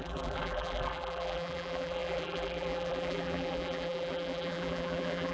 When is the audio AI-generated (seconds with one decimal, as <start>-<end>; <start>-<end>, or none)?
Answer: 0.0-5.3